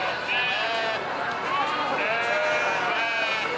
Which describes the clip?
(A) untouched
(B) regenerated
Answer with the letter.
A